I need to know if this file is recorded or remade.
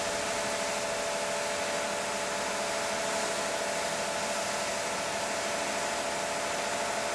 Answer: recorded